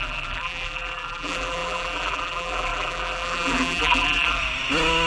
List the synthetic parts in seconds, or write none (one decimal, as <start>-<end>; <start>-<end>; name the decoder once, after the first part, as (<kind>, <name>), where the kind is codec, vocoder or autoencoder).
0.0-4.4 (vocoder, BigVGAN v2)